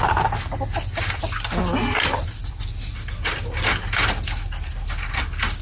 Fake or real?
real